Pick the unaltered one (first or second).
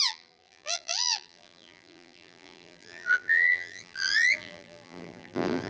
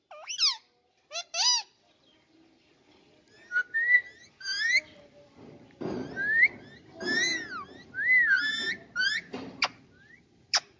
second